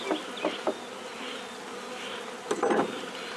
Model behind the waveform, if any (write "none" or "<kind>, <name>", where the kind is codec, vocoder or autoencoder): none